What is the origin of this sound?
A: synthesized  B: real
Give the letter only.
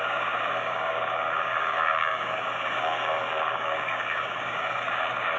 A